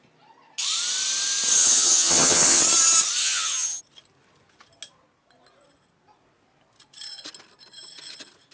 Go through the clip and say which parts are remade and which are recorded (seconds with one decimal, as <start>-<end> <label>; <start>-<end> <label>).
0.0-1.6 recorded; 1.6-2.6 remade; 2.6-3.2 recorded; 3.2-3.8 remade; 3.8-8.5 recorded